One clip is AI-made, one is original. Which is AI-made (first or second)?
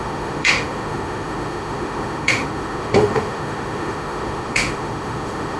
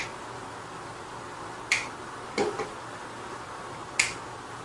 first